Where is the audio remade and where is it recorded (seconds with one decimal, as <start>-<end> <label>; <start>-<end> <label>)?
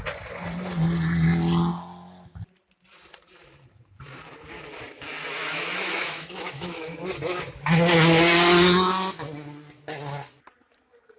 0.0-5.4 recorded; 5.4-7.0 remade; 7.0-11.2 recorded